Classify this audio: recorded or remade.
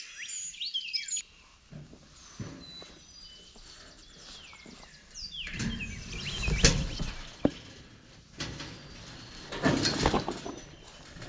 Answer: recorded